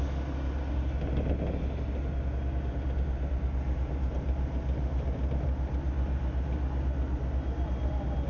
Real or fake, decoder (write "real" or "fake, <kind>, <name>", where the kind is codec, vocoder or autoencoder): real